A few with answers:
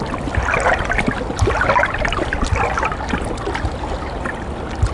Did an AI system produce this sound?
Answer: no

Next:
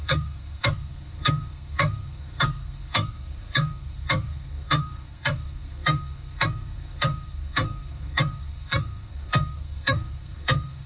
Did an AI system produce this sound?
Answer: yes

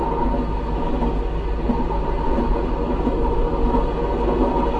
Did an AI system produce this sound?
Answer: no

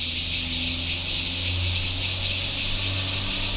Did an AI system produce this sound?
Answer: no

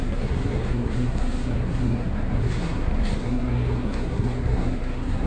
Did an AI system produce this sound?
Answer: yes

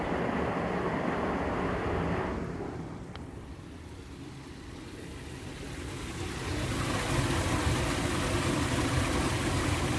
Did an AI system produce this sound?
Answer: no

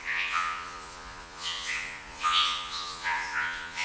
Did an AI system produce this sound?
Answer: yes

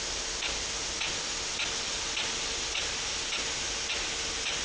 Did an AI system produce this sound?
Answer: no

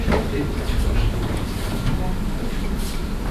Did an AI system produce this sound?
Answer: no